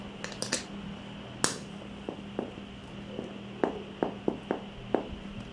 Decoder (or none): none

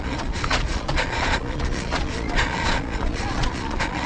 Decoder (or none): vocoder, Vocos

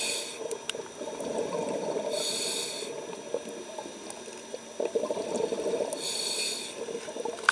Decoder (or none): none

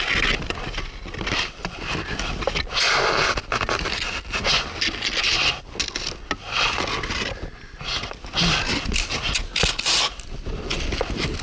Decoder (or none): none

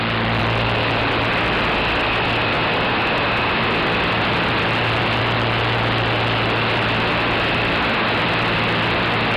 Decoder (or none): none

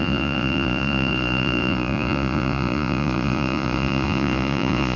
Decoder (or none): vocoder, Vocos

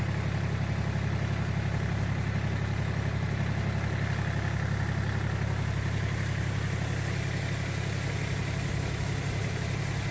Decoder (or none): none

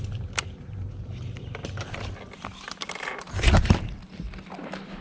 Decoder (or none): none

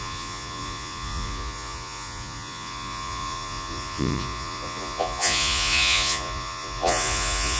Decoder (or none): vocoder, Vocos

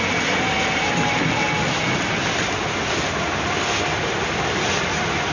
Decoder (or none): none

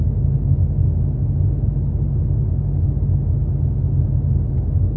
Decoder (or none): none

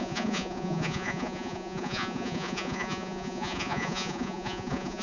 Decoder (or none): vocoder, Vocos